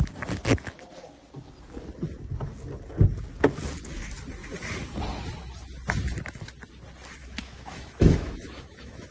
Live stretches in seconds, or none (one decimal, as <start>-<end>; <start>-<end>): 0.0-7.2